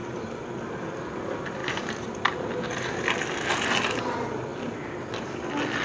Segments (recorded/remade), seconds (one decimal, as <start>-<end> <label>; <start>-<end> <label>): 0.0-5.8 recorded